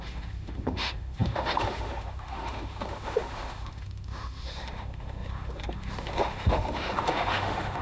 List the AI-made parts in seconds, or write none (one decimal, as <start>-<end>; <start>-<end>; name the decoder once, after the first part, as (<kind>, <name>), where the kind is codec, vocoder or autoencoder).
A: 0.0-7.8 (autoencoder, DAC-VAE)